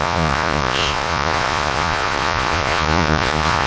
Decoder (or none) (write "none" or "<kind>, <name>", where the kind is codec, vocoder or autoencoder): vocoder, Vocos